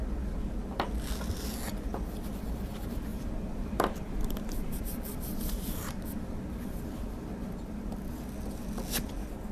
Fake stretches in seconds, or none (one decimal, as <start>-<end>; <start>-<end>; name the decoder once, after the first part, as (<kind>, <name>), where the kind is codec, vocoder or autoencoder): 3.1-6.7 (vocoder, BigVGAN v2)

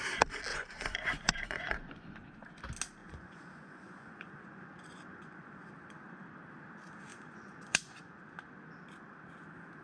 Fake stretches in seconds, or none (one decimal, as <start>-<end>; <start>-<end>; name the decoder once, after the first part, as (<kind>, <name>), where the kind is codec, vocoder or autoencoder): 0.5-2.3 (vocoder, Vocos); 3.0-5.7; 7.1-8.2

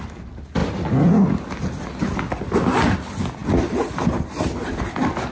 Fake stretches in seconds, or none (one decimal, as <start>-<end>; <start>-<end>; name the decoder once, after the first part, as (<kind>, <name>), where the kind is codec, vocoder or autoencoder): none

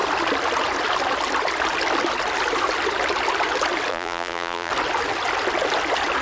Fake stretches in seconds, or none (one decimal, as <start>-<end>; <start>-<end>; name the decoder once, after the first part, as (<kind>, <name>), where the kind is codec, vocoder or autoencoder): 3.9-4.7 (vocoder, BigVGAN v2)

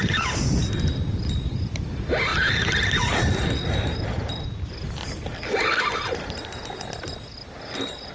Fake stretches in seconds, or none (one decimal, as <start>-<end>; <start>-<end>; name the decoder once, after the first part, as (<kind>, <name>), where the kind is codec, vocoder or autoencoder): none

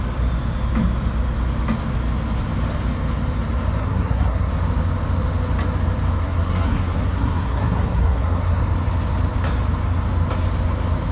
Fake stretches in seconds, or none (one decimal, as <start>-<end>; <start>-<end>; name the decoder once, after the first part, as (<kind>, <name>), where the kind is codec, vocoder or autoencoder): 3.8-4.5 (codec, SNAC); 6.2-8.6

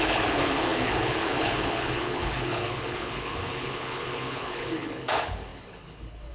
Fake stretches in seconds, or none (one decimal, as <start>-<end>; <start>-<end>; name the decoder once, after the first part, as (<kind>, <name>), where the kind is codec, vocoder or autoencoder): 0.0-6.3 (codec, HILCodec)